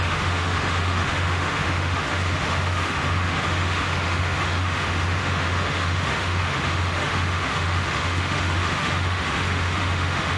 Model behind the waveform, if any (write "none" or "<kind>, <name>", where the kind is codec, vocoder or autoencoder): autoencoder, DAC-VAE